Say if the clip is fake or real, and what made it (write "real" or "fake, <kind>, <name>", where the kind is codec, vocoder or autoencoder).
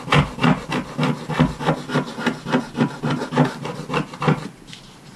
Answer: real